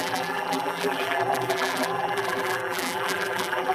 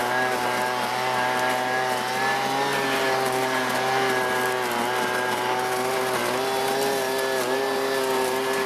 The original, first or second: second